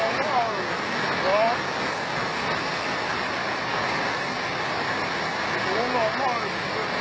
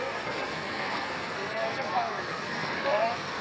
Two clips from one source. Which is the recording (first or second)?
first